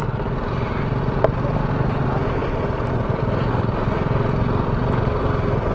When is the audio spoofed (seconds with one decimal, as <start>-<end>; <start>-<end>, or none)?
none